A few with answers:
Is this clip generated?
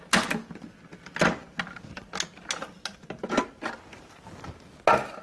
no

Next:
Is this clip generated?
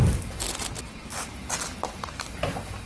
no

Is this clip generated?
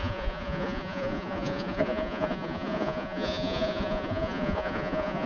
yes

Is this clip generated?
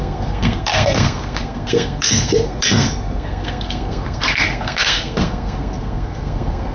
yes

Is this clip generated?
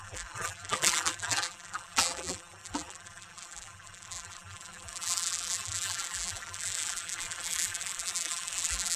yes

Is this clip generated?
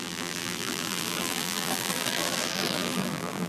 yes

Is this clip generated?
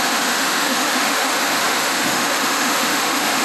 yes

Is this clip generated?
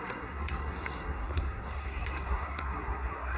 yes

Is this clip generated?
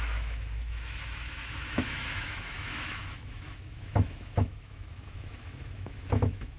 yes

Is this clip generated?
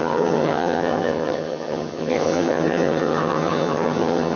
yes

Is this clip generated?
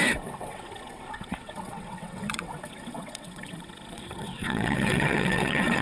yes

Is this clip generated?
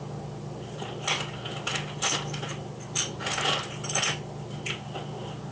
no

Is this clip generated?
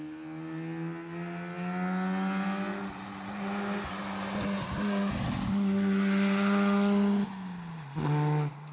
no